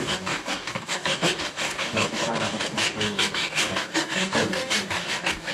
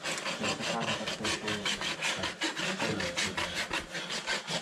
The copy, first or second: first